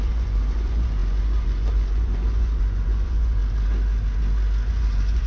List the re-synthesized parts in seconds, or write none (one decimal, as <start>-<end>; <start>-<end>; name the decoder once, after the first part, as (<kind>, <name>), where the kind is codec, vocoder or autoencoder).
0.0-3.4 (vocoder, Vocos); 4.7-5.3